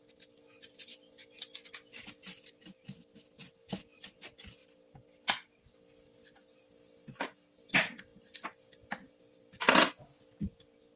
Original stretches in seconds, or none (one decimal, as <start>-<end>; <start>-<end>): 0.0-11.0